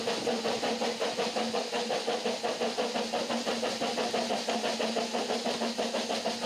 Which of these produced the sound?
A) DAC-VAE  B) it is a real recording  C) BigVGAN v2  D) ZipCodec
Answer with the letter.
B